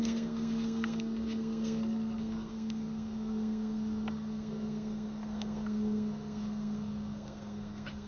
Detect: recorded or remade remade